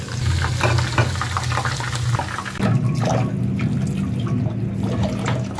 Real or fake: real